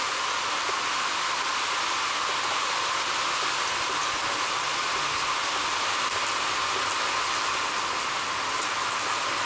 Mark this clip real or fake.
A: real